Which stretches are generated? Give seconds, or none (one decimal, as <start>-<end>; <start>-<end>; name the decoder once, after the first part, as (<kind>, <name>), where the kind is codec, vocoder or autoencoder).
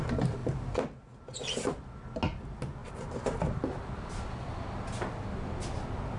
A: none